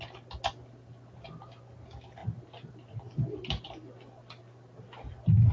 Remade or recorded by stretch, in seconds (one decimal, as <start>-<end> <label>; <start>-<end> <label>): 0.0-5.5 recorded